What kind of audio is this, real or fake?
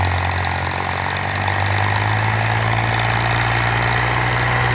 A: real